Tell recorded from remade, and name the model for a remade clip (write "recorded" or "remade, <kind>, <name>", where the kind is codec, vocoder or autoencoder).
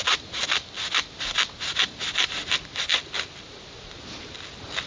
recorded